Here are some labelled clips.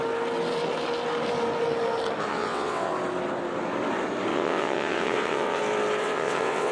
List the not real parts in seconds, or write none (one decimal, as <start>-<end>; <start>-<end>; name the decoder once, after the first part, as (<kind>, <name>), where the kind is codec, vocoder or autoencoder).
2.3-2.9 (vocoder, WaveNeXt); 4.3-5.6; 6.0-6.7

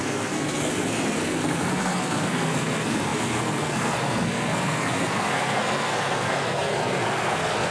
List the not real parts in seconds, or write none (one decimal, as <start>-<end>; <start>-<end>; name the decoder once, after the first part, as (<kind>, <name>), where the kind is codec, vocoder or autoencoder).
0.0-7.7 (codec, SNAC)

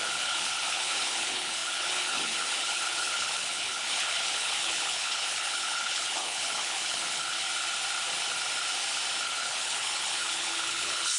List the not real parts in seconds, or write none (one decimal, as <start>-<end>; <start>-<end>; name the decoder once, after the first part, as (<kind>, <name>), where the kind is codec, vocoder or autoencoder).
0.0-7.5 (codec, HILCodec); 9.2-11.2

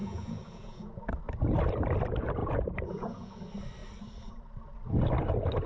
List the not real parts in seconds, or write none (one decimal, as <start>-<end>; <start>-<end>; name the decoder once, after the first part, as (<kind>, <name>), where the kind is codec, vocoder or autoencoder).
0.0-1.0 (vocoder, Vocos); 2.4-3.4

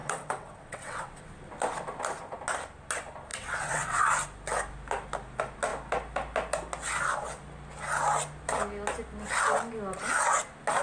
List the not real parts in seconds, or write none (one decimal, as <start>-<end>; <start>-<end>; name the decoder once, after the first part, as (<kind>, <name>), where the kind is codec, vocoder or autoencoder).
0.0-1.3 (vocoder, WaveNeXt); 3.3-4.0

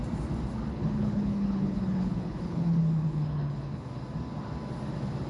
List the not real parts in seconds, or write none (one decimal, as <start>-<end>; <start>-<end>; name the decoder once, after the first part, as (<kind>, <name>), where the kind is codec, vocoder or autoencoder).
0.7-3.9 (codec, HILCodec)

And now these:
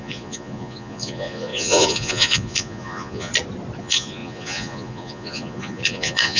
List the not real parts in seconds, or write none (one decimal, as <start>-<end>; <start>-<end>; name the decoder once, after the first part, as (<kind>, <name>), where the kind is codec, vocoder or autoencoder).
0.0-3.3 (vocoder, Vocos); 3.8-6.4

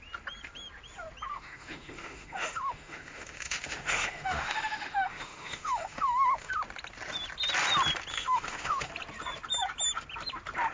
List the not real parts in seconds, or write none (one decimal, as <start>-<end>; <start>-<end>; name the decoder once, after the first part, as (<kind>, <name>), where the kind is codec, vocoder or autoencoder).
1.3-6.5 (autoencoder, DAC-VAE); 8.1-8.9